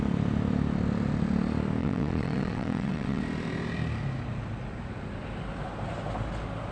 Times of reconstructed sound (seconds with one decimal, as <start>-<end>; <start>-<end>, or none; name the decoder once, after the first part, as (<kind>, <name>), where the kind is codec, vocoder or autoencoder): 1.8-3.2 (vocoder, WaveNeXt)